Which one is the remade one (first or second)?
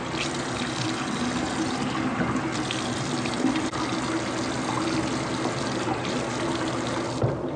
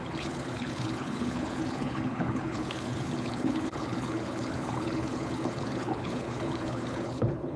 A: second